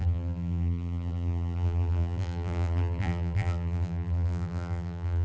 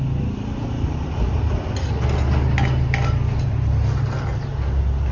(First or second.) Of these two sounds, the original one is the second